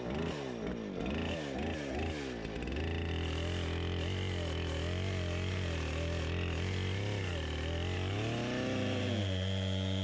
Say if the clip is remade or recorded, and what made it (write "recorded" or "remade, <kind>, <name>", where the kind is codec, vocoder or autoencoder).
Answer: recorded